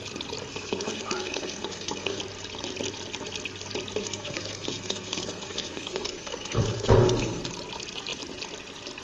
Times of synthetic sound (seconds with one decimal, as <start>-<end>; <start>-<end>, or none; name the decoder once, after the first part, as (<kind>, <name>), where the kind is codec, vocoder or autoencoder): 0.5-2.2 (codec, SNAC); 4.0-7.4